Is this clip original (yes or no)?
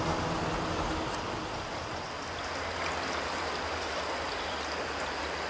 yes